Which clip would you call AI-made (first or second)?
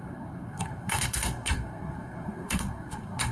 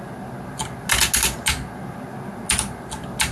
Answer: first